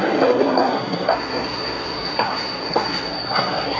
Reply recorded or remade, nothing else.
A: remade